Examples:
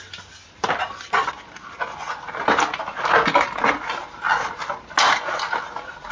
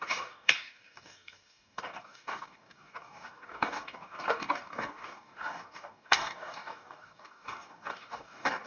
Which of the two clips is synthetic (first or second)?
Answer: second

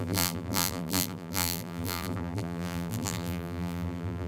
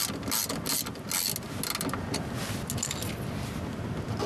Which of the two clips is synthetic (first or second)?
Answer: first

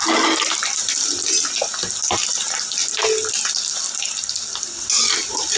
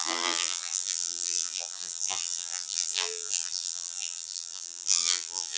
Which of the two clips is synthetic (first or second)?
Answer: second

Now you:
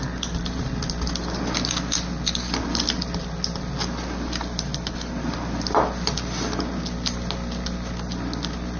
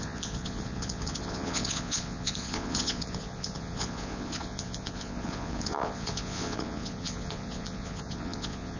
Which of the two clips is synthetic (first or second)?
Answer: second